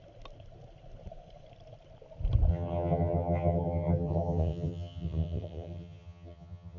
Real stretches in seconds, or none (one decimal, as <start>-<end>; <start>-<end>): 0.0-2.5